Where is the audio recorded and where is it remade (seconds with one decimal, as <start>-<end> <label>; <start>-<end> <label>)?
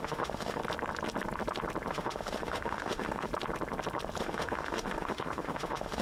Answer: 0.0-0.6 remade; 0.6-1.9 recorded; 1.9-3.3 remade; 3.3-4.2 recorded; 4.2-6.0 remade